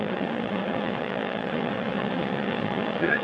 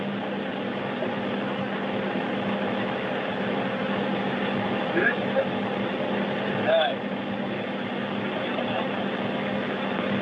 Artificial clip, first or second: first